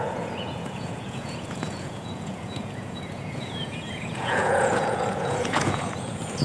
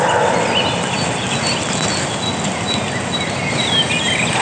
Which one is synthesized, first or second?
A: first